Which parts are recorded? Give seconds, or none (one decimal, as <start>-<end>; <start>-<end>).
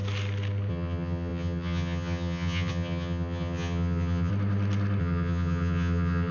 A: 0.0-0.7; 4.3-5.0